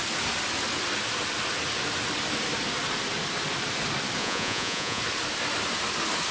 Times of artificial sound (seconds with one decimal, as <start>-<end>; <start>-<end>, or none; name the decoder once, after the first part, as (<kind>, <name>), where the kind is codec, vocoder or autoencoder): 4.2-5.0 (vocoder, Vocos)